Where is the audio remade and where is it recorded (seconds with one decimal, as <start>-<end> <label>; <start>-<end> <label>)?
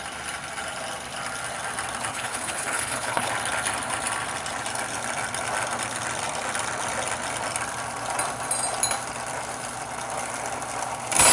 0.0-2.1 recorded; 2.1-3.3 remade; 3.3-11.3 recorded